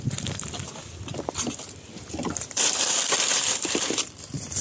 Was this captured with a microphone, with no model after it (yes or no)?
no